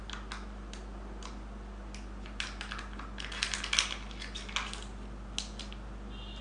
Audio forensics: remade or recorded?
recorded